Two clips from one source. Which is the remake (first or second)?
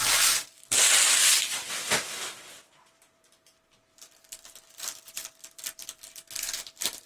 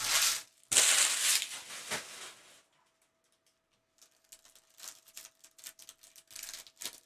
first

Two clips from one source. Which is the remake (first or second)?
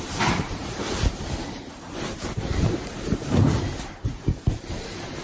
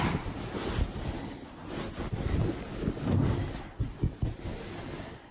first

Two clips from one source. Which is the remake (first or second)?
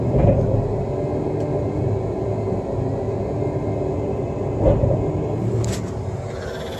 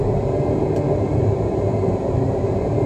second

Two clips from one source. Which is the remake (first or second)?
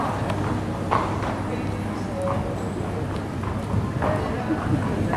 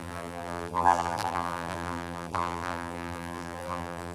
second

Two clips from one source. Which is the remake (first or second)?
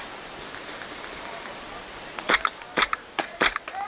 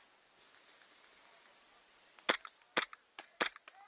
first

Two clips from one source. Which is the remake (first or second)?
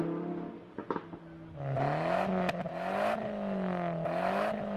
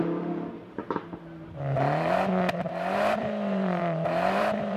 second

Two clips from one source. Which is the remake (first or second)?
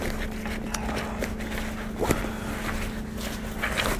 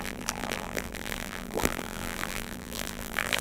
second